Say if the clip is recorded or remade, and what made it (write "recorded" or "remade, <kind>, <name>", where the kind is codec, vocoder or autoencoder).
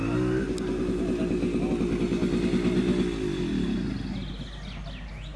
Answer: recorded